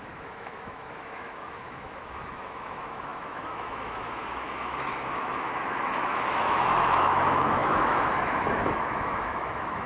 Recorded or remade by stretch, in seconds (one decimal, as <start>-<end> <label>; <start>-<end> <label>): 0.0-9.9 remade